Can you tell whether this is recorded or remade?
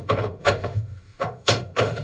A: remade